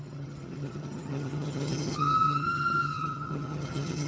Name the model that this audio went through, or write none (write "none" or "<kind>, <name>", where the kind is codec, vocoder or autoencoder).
vocoder, HiFi-GAN